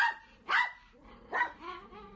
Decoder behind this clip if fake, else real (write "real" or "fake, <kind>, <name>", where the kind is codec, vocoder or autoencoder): real